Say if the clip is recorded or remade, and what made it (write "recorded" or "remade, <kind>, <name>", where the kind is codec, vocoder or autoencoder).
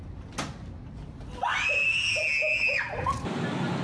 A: recorded